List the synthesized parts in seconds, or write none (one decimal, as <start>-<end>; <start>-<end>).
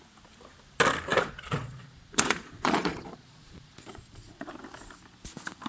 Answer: 1.1-4.5